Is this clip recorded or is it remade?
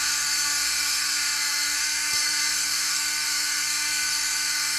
remade